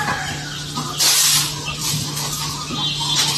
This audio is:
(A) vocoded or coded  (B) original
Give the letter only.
B